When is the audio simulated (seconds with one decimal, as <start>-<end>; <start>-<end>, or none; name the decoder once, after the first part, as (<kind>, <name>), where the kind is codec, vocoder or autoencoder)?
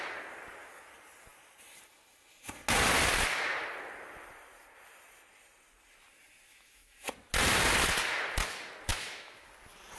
6.5-7.1 (autoencoder, DAC-VAE); 8.9-9.5